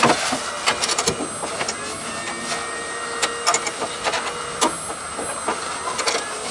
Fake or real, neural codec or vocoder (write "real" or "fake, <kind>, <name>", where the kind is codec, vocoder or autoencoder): real